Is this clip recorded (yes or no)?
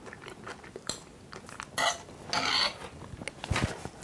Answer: yes